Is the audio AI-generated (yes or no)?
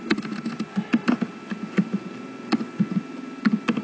yes